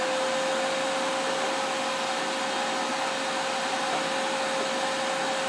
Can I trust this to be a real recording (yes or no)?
yes